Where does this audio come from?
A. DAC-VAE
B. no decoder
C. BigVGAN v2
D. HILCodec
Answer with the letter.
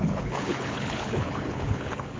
D